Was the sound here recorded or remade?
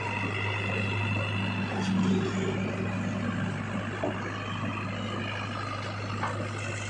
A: recorded